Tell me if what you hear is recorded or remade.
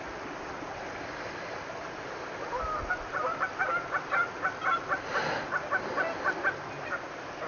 recorded